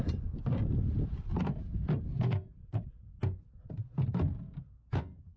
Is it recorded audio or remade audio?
recorded